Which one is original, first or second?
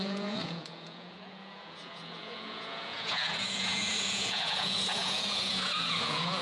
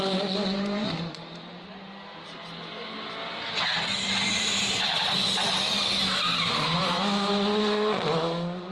second